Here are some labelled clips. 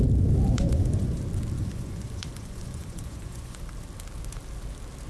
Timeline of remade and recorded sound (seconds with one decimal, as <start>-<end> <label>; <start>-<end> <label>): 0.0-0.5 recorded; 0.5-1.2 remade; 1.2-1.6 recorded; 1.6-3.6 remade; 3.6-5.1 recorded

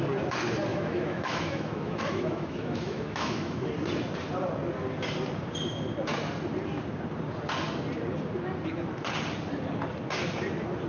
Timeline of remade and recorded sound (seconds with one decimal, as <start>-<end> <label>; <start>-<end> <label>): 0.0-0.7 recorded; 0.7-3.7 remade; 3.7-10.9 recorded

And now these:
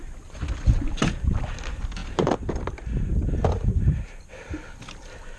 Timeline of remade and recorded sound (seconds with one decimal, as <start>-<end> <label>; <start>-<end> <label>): 0.0-5.4 recorded

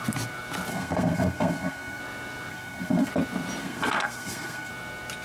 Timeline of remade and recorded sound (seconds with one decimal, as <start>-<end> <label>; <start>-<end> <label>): 0.0-0.7 recorded; 0.7-2.0 remade; 2.0-2.5 recorded; 2.5-3.1 remade; 3.1-3.6 recorded; 3.6-4.7 remade; 4.7-5.2 recorded